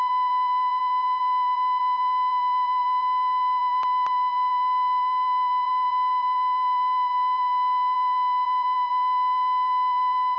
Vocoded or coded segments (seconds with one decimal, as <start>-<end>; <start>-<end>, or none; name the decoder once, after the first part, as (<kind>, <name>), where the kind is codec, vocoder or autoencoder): 0.0-10.4 (vocoder, BigVGAN v2)